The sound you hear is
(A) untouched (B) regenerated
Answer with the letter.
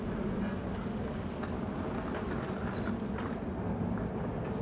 A